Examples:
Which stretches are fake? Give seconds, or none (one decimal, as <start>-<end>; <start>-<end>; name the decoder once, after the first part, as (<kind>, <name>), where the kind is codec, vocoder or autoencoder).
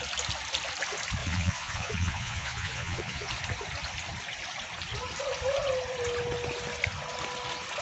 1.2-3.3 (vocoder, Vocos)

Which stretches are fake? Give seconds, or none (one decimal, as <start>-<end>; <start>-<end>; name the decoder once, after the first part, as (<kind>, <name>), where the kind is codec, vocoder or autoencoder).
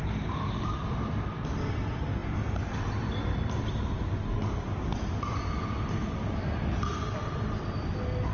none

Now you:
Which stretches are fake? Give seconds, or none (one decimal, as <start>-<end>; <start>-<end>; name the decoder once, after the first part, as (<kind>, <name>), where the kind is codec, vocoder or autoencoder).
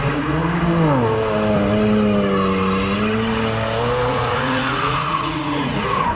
0.0-0.4 (vocoder, Vocos); 4.1-6.1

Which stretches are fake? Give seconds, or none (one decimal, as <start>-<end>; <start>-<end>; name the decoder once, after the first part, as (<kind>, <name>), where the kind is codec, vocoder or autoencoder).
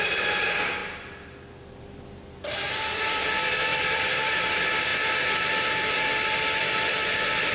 0.0-0.8 (vocoder, BigVGAN v2); 1.8-7.5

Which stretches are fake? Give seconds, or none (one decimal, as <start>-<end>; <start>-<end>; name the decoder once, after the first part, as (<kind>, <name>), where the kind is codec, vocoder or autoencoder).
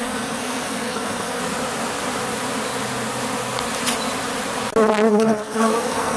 0.0-1.4 (codec, SNAC); 5.1-6.2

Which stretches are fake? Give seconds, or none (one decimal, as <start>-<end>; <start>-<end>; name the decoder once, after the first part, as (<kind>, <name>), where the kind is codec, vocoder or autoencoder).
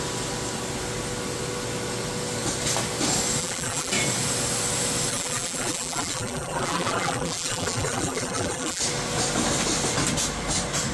3.4-3.9 (vocoder, BigVGAN v2); 5.1-8.8